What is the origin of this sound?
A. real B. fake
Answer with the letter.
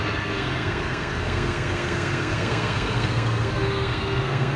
B